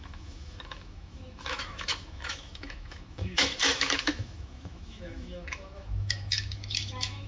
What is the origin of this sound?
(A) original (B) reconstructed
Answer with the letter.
B